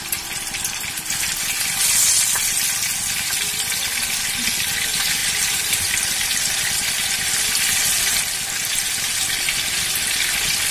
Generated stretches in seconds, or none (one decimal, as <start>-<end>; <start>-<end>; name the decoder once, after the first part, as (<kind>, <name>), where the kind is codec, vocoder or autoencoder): none